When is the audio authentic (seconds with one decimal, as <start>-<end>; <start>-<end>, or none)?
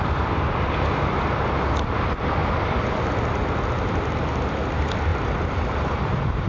0.0-2.4; 3.1-5.1